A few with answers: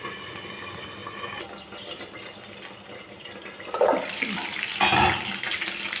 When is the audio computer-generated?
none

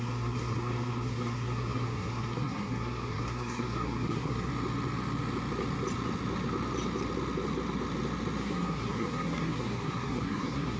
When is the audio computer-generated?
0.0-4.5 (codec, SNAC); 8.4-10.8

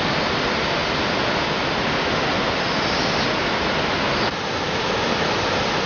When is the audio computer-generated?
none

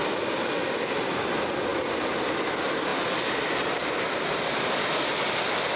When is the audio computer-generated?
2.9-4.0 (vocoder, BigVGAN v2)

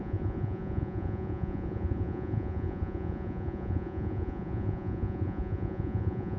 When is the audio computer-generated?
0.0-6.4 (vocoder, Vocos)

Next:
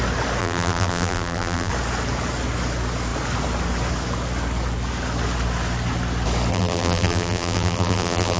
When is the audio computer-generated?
0.4-1.7 (vocoder, BigVGAN v2); 6.5-8.4